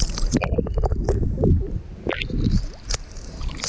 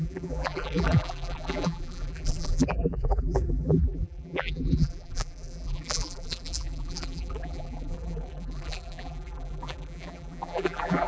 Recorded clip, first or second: first